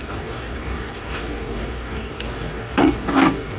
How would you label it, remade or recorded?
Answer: remade